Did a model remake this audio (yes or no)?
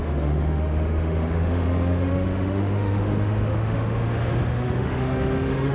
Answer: yes